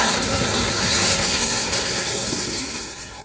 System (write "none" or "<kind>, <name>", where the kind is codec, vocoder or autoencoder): codec, SNAC